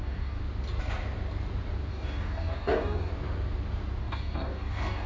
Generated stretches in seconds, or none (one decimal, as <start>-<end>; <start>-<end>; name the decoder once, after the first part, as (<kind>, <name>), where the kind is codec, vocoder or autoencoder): 0.0-0.4 (codec, DAC); 1.9-3.1; 4.0-5.1